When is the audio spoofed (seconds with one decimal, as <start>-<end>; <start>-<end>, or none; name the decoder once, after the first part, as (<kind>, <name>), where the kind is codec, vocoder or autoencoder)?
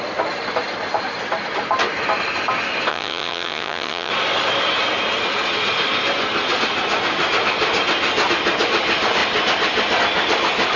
2.9-4.1 (vocoder, HiFi-GAN)